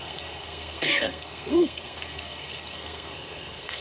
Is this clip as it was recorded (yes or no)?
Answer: no